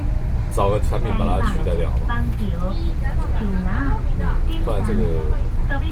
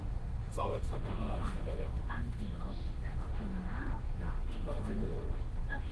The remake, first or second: second